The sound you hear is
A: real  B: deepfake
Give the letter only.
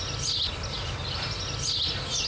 A